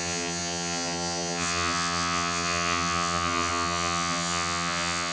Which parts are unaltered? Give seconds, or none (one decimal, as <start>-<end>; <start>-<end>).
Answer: none

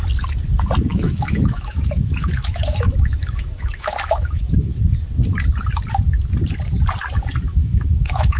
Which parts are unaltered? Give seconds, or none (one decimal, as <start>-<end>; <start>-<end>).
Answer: 0.0-0.9; 4.8-7.5

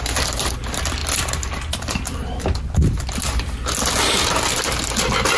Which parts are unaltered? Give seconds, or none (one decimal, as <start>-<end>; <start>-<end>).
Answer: 0.0-1.0; 3.0-5.4

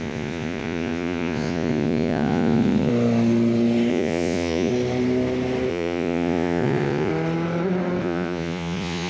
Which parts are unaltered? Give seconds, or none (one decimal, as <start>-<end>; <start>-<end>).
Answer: 2.9-3.9; 4.7-5.7; 7.1-8.0

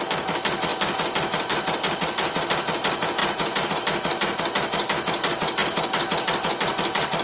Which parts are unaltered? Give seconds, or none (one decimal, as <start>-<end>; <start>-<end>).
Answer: 0.0-0.7; 2.5-7.2

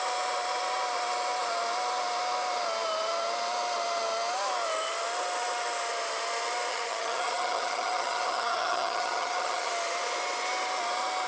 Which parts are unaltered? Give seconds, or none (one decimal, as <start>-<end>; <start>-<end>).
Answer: 0.0-6.7; 9.7-11.3

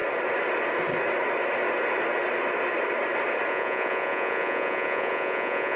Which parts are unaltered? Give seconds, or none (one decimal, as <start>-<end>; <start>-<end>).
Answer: 0.0-3.5